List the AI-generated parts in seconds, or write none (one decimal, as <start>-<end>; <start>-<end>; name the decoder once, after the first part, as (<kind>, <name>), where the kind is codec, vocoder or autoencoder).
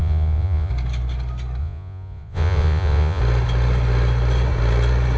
0.0-0.7 (vocoder, Vocos); 1.6-3.2